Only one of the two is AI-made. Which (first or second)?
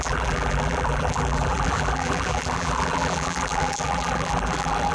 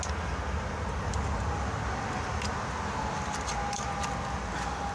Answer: first